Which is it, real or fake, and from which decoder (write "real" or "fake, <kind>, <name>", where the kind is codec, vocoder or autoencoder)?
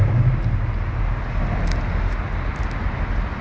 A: real